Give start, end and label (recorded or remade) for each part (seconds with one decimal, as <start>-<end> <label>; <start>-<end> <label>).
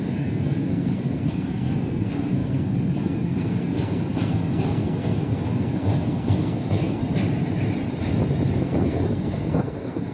0.0-7.0 remade; 7.0-8.6 recorded; 8.6-10.1 remade